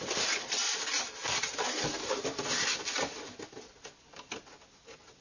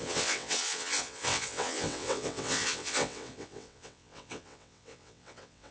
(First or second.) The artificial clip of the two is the second